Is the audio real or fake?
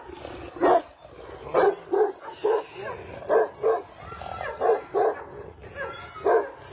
real